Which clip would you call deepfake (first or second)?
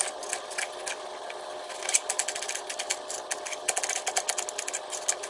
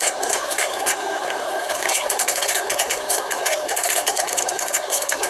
second